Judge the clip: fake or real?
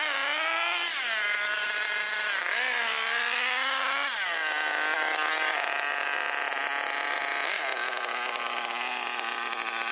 real